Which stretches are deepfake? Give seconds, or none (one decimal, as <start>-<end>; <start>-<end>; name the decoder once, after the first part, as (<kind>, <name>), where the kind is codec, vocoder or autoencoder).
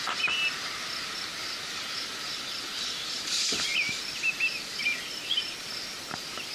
1.3-2.7 (vocoder, BigVGAN v2)